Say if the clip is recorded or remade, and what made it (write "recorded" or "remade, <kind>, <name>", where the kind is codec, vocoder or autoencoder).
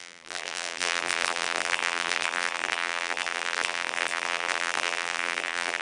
remade, vocoder, BigVGAN v2